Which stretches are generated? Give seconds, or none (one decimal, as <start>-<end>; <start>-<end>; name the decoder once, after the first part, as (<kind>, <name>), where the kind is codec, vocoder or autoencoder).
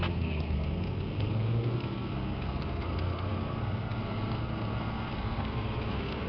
0.0-6.3 (codec, SNAC)